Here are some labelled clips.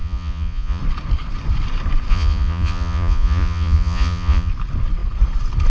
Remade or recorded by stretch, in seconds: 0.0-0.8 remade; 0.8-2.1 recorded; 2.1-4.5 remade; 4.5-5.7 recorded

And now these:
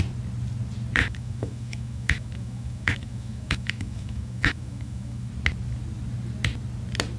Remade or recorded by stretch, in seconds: 0.0-1.0 recorded; 1.0-5.3 remade; 5.3-7.2 recorded

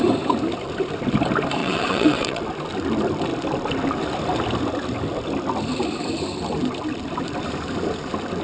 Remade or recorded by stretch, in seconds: 0.0-1.6 recorded; 1.6-2.4 remade; 2.4-8.4 recorded

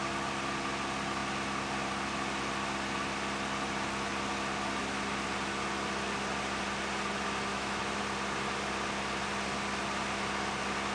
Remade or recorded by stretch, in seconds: 0.0-7.5 recorded; 7.5-8.0 remade; 8.0-10.9 recorded